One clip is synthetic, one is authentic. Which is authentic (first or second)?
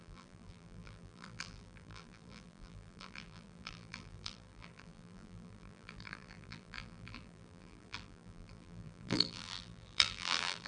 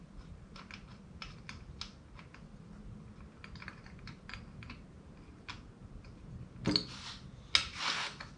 second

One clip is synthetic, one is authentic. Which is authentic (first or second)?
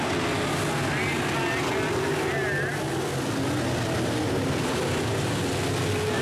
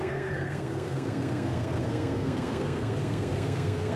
first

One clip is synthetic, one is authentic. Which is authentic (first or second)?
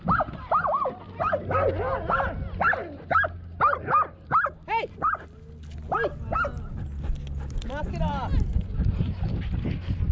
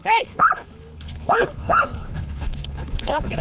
first